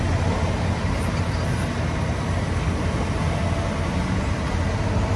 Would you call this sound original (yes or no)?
yes